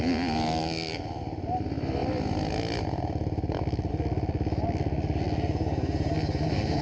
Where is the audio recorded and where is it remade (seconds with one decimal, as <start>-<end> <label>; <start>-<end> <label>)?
0.0-6.8 recorded